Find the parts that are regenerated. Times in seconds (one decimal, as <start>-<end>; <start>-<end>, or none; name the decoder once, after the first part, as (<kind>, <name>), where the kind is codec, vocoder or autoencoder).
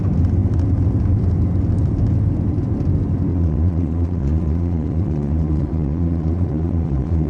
3.3-7.3 (vocoder, Vocos)